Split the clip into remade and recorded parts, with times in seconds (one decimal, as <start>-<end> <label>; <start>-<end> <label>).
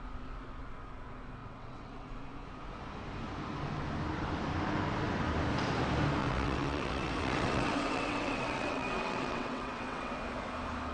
0.0-1.4 recorded; 1.4-2.1 remade; 2.1-6.2 recorded; 6.2-10.1 remade; 10.1-10.9 recorded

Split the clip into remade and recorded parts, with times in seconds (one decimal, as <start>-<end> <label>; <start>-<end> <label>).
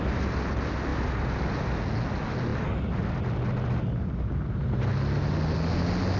0.0-6.2 recorded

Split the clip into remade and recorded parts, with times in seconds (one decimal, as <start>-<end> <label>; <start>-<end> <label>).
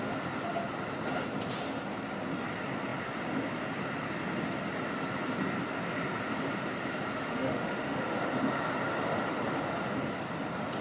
0.0-7.3 recorded; 7.3-8.0 remade; 8.0-10.8 recorded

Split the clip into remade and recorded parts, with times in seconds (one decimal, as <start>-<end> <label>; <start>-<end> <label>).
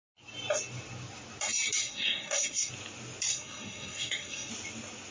0.0-1.8 recorded; 1.8-2.7 remade; 2.7-3.3 recorded; 3.3-4.5 remade; 4.5-5.1 recorded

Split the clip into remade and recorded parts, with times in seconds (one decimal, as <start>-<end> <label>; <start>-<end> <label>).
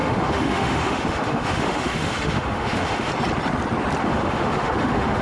0.0-3.1 remade; 3.1-4.0 recorded; 4.0-5.2 remade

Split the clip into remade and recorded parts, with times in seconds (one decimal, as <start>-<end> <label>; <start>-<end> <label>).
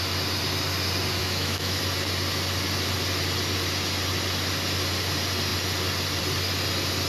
0.0-1.2 recorded; 1.2-1.8 remade; 1.8-7.1 recorded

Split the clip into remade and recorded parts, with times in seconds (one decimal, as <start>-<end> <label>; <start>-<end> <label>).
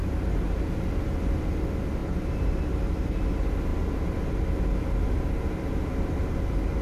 0.0-0.7 remade; 0.7-2.0 recorded; 2.0-3.2 remade; 3.2-6.8 recorded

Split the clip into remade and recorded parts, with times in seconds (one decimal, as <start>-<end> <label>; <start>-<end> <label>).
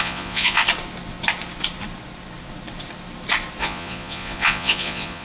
0.0-0.6 remade; 0.6-3.6 recorded; 3.6-5.2 remade